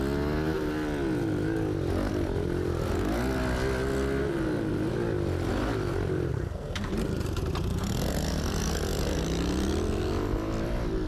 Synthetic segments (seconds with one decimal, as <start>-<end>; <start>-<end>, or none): 6.3-6.9